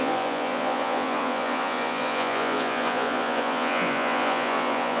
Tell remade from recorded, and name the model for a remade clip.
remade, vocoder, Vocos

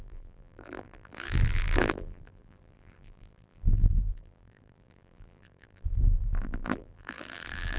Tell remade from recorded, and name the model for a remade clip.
remade, vocoder, BigVGAN v2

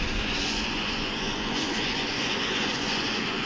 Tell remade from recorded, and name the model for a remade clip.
remade, vocoder, Vocos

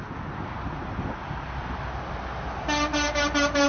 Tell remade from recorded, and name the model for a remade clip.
recorded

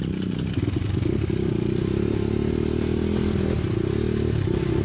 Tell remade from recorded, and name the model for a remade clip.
recorded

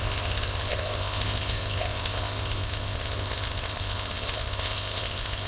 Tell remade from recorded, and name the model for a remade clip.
remade, codec, ZipCodec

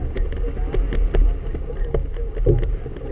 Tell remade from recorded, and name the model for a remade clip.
recorded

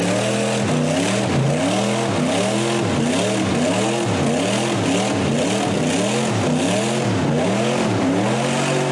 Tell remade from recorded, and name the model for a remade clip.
recorded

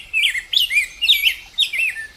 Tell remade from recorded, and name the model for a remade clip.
recorded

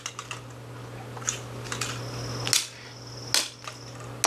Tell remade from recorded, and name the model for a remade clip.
recorded